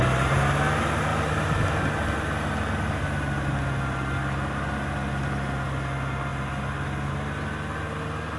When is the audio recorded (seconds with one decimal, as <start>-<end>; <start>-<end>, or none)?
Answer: 0.0-8.4